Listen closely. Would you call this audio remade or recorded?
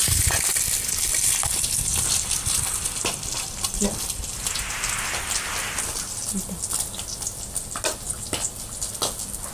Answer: recorded